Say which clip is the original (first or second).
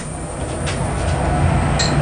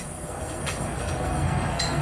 first